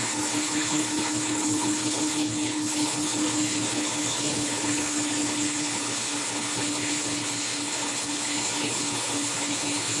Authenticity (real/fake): fake